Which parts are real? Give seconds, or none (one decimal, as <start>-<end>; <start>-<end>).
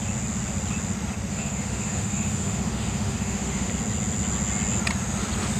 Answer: 0.0-1.3; 3.7-5.6